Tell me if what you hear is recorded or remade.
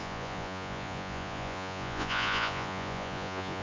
remade